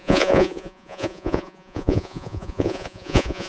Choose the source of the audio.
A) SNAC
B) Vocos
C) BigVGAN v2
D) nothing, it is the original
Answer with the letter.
B